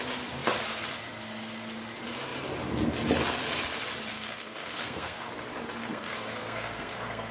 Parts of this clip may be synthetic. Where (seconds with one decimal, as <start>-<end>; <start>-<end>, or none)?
4.1-5.3; 5.8-7.3